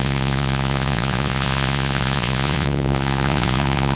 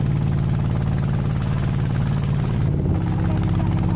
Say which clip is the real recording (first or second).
second